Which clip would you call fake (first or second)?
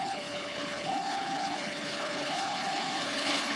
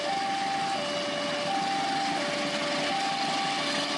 first